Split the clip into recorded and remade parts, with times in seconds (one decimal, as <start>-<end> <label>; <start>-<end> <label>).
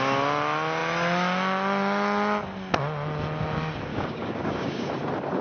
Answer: 0.0-3.9 recorded; 3.9-4.9 remade; 4.9-5.4 recorded